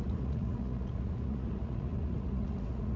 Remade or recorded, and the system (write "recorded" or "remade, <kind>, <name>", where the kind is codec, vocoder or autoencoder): remade, vocoder, Vocos